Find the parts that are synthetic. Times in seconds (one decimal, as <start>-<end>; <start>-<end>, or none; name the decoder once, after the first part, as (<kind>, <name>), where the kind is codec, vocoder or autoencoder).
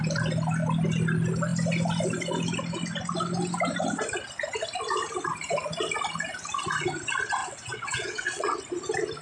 7.4-8.6 (vocoder, WaveNeXt)